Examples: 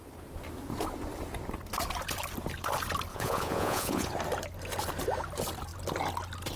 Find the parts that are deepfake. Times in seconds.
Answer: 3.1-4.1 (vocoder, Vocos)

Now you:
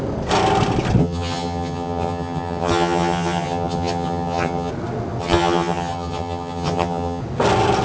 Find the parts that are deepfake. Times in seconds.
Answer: 1.0-4.7 (vocoder, HiFi-GAN); 5.2-7.2

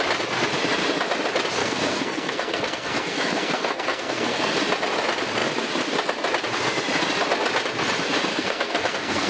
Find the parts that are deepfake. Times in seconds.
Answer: 1.6-4.6 (codec, SNAC); 8.3-9.3

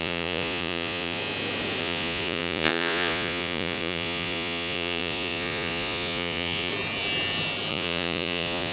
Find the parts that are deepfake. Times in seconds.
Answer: 0.0-1.2 (vocoder, Vocos); 1.8-6.7; 7.7-8.7

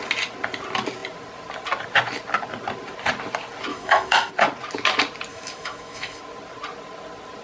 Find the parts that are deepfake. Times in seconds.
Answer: 3.7-4.3 (autoencoder, DAC-VAE); 5.3-6.2